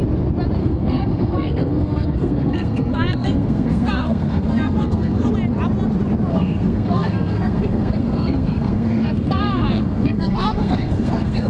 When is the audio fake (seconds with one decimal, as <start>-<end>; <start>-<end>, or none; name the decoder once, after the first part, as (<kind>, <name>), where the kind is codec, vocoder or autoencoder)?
0.6-5.3 (codec, SNAC); 6.3-11.5